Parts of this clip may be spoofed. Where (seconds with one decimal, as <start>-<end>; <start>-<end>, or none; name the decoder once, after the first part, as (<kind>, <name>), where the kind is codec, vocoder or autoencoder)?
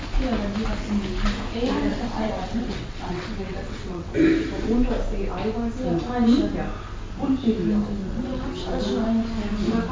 1.9-4.1 (vocoder, WaveNeXt); 8.0-8.8